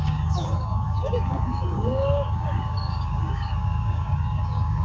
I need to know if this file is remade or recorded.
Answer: remade